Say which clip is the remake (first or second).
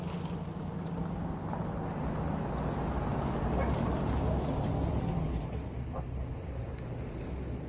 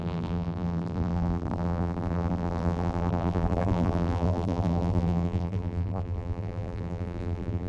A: second